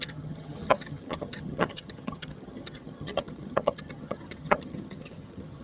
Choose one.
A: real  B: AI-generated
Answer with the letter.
B